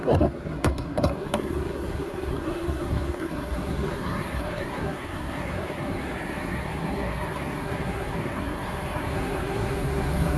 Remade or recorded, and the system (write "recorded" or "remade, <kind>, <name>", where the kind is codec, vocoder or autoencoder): remade, codec, SNAC